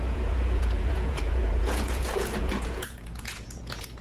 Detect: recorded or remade remade